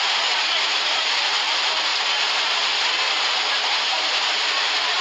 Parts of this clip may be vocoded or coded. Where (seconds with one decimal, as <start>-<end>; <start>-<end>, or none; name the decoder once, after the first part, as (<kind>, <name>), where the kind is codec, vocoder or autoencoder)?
0.0-1.9 (vocoder, BigVGAN v2); 3.5-5.0